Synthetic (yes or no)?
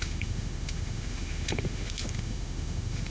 yes